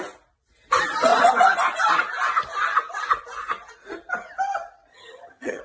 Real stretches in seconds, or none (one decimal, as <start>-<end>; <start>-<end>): 0.0-4.9

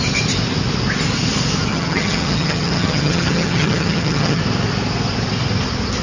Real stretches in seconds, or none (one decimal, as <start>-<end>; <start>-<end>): 0.0-1.7; 4.4-6.0

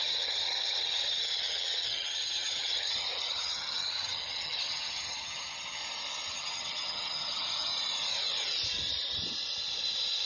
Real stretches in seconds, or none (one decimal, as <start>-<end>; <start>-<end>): 5.8-6.3; 7.7-10.3

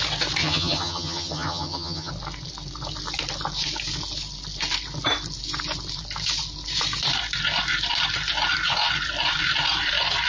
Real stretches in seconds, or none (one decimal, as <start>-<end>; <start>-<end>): 0.0-0.4; 2.1-10.3

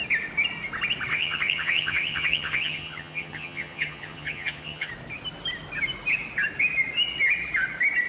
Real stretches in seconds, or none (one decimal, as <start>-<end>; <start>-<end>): 0.0-1.1; 4.9-8.1

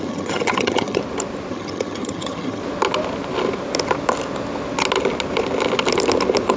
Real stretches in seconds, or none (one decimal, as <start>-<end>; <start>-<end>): 1.0-1.5; 2.6-6.6